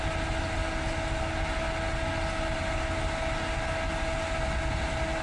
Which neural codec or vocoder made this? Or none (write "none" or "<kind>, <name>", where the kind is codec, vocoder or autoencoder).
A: none